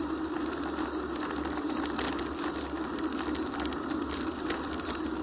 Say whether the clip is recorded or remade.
recorded